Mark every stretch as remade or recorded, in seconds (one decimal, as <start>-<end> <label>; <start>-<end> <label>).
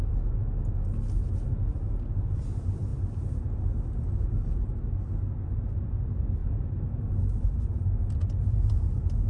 0.0-6.4 recorded; 6.4-7.1 remade; 7.1-9.3 recorded